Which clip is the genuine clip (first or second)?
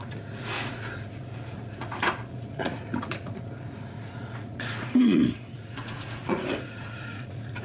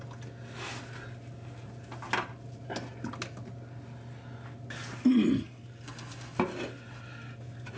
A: second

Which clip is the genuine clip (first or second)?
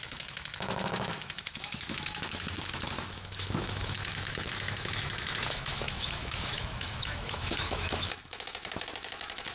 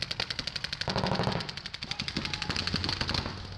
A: second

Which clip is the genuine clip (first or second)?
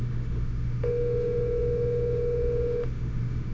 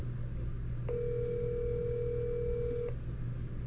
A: second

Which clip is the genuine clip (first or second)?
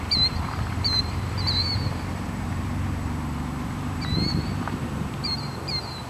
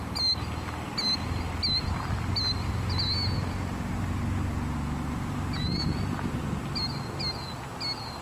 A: second